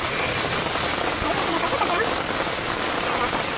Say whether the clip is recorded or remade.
recorded